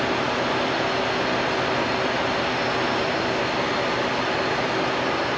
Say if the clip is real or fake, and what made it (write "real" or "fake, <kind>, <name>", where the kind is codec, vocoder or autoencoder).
real